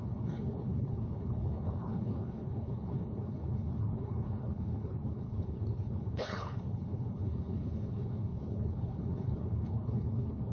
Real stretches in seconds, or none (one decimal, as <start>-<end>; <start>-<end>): none